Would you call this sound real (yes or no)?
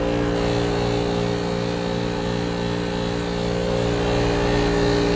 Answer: yes